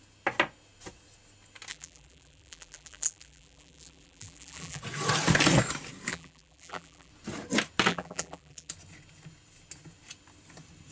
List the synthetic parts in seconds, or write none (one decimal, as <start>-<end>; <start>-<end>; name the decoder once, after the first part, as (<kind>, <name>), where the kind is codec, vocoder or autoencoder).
1.7-4.8 (vocoder, BigVGAN v2); 6.1-7.1; 7.9-8.7